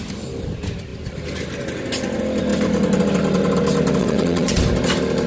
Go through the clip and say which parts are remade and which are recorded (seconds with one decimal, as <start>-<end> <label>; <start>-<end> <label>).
0.0-4.0 recorded; 4.0-4.5 remade; 4.5-5.3 recorded